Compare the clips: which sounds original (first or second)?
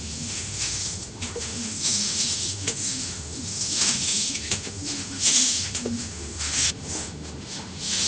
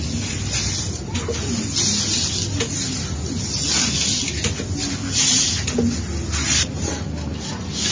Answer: second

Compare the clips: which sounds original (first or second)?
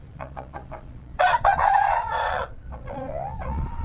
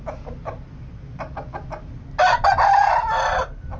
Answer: second